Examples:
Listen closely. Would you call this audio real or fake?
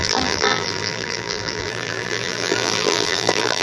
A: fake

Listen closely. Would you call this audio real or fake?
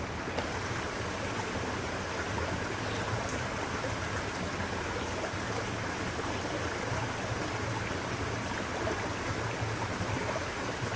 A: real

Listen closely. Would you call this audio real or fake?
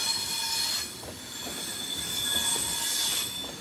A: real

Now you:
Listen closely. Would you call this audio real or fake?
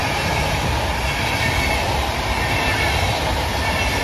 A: real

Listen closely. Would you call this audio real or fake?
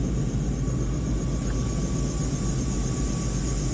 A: real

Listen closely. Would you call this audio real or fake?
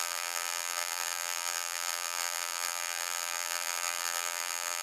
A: fake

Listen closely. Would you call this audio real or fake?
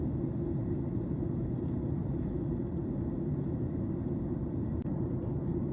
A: real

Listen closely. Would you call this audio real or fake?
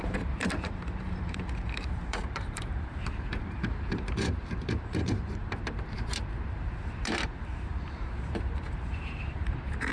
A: fake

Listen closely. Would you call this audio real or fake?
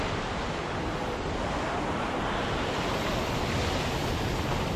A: real